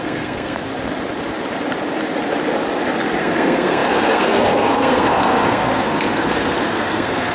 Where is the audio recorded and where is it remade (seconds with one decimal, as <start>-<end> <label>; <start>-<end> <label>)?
0.0-0.7 remade; 0.7-3.2 recorded; 3.2-7.3 remade